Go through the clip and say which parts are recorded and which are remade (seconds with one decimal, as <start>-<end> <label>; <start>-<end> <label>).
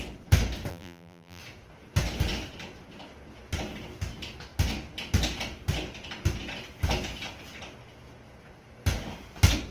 0.0-0.7 recorded; 0.7-1.4 remade; 1.4-9.7 recorded